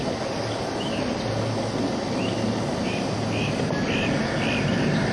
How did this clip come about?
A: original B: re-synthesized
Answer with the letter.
A